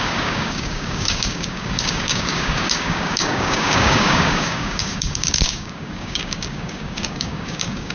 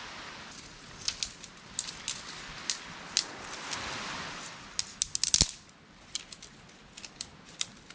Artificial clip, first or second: first